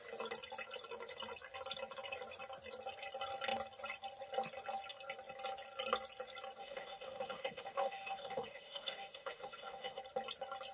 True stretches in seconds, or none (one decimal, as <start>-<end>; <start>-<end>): 0.0-6.6; 10.0-10.7